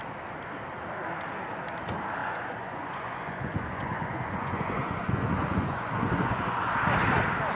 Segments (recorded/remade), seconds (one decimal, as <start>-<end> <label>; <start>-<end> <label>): 0.0-2.2 recorded; 2.2-6.7 remade; 6.7-7.5 recorded